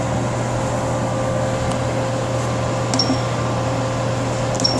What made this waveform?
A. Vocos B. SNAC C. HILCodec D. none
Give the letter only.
D